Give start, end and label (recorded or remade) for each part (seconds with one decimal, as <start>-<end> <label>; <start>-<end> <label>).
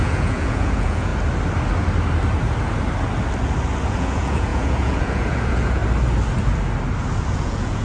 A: 0.0-1.1 remade; 1.1-3.9 recorded; 3.9-5.8 remade; 5.8-7.3 recorded; 7.3-7.8 remade